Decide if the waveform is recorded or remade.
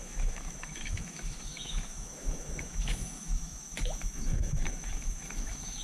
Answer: remade